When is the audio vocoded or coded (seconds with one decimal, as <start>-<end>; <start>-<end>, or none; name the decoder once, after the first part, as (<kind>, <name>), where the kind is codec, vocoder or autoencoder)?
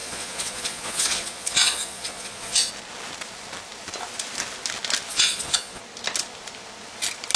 0.0-2.7 (vocoder, Vocos); 5.1-5.8